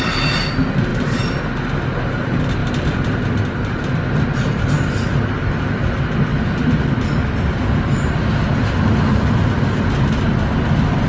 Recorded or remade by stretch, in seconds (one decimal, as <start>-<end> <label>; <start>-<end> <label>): 0.0-0.9 recorded; 0.9-1.4 remade; 1.4-11.1 recorded